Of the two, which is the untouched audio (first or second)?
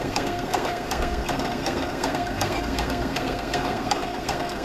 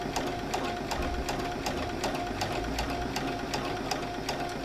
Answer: second